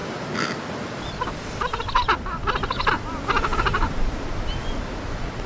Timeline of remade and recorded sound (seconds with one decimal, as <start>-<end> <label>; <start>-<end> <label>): 0.0-5.5 recorded